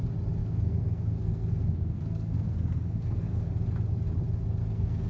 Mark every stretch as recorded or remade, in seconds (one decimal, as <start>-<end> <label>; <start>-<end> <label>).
0.0-0.4 recorded; 0.4-3.5 remade; 3.5-4.6 recorded; 4.6-5.1 remade